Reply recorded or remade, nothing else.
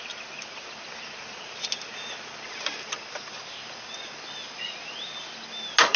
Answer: recorded